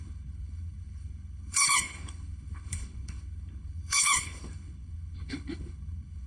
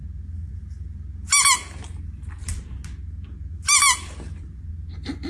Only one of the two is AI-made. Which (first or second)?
first